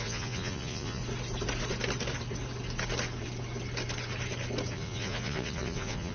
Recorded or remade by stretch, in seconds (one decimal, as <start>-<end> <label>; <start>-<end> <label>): 0.0-1.0 remade; 1.0-4.7 recorded; 4.7-6.1 remade